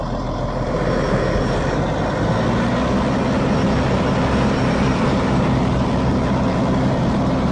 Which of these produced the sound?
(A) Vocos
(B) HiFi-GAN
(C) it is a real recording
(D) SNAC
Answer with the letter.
C